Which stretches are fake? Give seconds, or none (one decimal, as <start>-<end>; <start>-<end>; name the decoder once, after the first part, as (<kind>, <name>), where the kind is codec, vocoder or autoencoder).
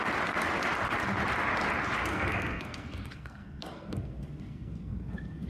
2.1-5.5 (codec, SNAC)